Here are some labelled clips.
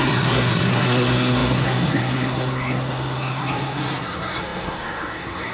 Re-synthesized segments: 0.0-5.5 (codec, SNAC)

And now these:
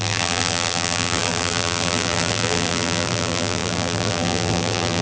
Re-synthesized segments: 0.0-5.0 (vocoder, BigVGAN v2)

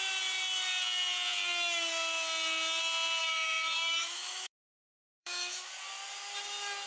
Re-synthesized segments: 3.2-5.7 (autoencoder, DAC-VAE)

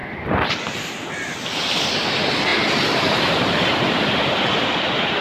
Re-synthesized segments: 0.0-0.9 (vocoder, BigVGAN v2); 2.5-4.8

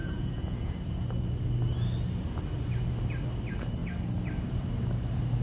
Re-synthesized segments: 0.0-0.8 (vocoder, Vocos)

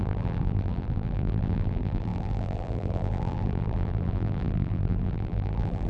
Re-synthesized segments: 0.0-5.9 (vocoder, BigVGAN v2)

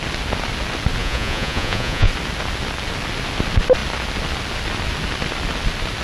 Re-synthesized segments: 1.0-2.1 (vocoder, Vocos)

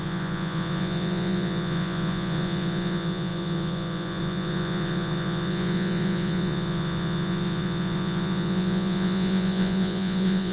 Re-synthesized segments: 0.0-10.5 (vocoder, Vocos)